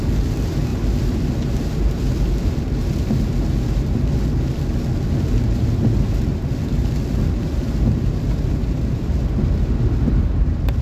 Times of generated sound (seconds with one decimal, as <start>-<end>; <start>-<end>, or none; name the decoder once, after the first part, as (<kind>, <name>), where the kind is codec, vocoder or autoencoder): none